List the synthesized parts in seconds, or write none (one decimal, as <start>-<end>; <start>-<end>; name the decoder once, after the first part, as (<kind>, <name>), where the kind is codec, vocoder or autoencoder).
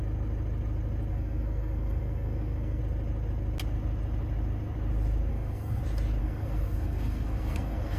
1.1-2.8 (codec, SNAC); 5.3-5.8; 6.2-8.0